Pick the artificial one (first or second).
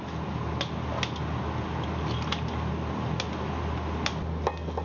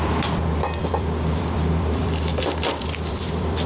second